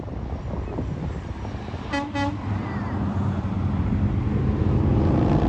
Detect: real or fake real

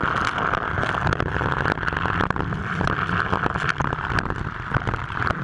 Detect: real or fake real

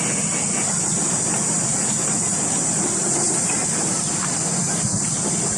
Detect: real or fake real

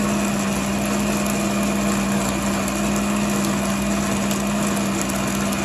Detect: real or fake real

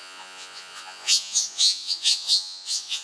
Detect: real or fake fake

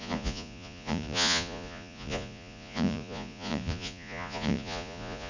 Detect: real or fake fake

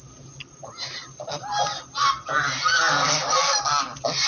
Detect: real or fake real